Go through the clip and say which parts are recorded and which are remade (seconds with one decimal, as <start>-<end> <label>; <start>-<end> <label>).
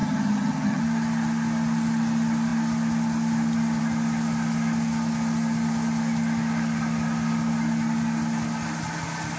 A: 0.0-0.8 remade; 0.8-9.4 recorded